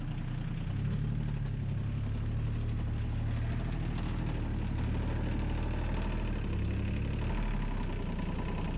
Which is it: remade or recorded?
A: recorded